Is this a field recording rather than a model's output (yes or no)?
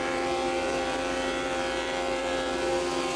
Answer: no